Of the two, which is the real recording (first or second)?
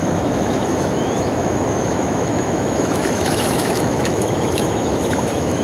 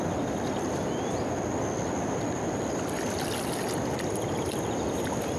second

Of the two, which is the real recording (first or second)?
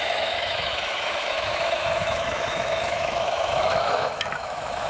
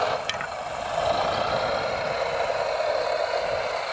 second